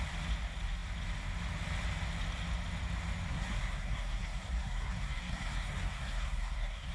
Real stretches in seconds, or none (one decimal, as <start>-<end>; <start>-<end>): 0.0-3.3